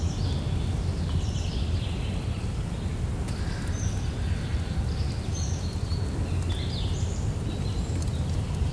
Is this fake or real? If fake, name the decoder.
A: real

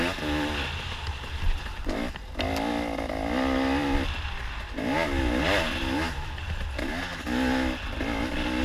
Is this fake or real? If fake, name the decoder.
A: real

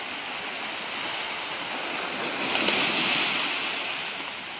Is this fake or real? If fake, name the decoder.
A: real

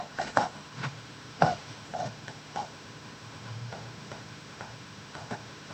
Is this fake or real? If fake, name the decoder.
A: fake, autoencoder, DAC-VAE